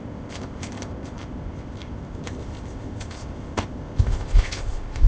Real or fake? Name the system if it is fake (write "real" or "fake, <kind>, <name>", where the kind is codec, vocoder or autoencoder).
fake, codec, ZipCodec